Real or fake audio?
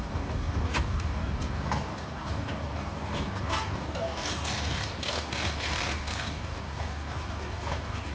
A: fake